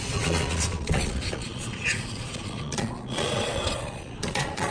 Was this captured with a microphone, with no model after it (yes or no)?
no